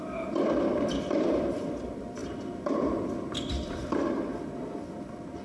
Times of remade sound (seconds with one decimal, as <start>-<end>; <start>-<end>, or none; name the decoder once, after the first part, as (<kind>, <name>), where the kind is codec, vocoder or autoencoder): 0.0-2.2 (vocoder, BigVGAN v2); 3.5-5.4